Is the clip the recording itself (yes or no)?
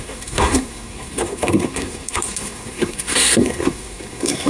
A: no